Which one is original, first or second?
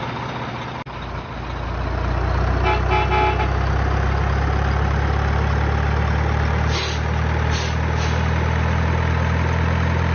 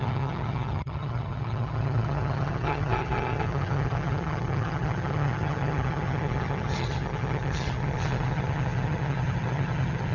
first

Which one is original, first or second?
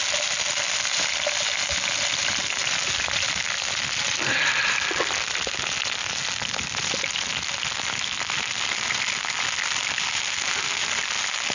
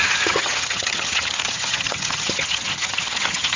first